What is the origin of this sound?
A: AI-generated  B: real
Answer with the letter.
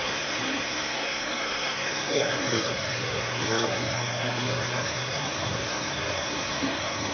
A